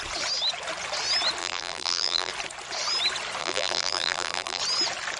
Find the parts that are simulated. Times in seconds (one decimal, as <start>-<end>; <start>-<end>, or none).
1.4-2.3; 3.4-4.6

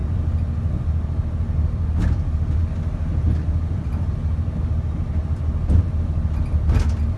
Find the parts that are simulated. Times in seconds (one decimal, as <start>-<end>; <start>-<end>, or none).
none

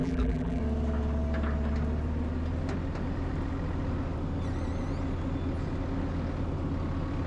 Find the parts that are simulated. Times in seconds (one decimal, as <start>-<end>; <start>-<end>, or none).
0.0-0.6

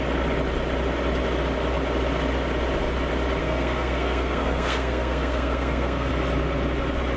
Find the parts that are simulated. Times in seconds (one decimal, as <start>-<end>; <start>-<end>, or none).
3.4-6.1

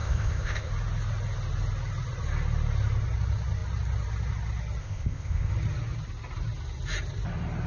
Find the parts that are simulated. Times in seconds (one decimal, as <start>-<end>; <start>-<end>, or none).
0.0-0.7; 4.8-5.5

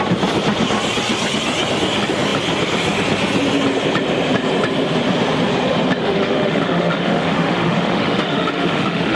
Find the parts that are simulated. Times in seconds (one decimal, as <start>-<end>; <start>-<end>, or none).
6.0-9.2